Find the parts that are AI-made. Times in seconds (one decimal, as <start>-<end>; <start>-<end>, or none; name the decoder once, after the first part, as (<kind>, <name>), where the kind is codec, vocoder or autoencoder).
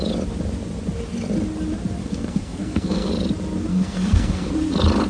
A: 2.0-3.1 (codec, SNAC); 3.7-4.5